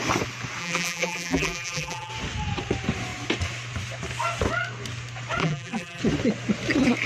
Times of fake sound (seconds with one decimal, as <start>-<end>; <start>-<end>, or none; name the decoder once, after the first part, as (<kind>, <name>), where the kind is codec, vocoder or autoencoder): 0.6-2.1 (vocoder, BigVGAN v2); 5.4-6.0